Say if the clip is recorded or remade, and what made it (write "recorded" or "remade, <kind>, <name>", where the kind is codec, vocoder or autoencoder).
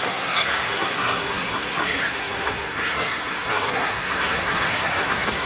remade, codec, SNAC